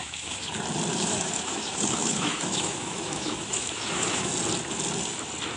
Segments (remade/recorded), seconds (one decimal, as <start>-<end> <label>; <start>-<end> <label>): 0.0-0.5 remade; 0.5-0.9 recorded; 0.9-4.3 remade; 4.3-5.6 recorded

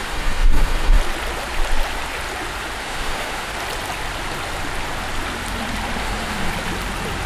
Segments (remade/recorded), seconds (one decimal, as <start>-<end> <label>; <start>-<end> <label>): 0.0-1.0 remade; 1.0-2.8 recorded; 2.8-3.5 remade; 3.5-6.0 recorded; 6.0-6.5 remade; 6.5-7.3 recorded